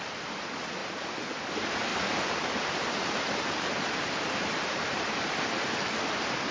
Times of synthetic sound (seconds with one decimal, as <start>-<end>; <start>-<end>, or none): 1.9-5.2